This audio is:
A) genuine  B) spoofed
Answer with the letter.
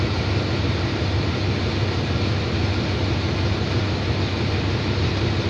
A